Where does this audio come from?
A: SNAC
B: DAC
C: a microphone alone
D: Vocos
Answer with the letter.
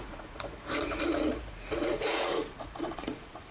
D